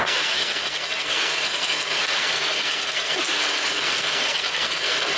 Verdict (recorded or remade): remade